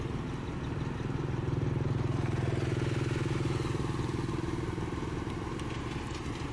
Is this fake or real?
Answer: real